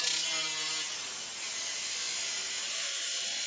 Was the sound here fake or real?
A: real